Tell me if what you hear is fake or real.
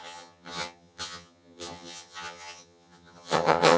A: fake